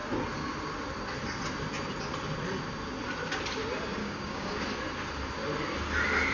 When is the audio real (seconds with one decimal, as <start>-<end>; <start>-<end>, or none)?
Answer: 0.0-4.0; 4.6-6.3